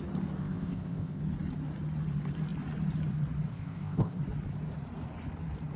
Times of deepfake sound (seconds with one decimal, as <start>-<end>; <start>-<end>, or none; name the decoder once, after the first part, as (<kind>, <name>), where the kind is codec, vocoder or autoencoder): 0.4-1.2 (codec, ZipCodec); 3.5-4.2